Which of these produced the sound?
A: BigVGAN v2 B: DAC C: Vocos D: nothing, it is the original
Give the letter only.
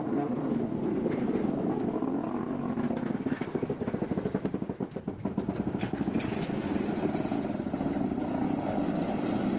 D